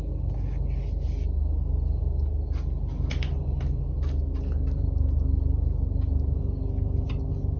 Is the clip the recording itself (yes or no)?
yes